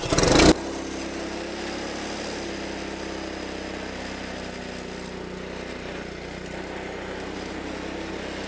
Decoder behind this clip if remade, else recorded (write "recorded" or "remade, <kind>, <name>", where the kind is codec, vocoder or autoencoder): recorded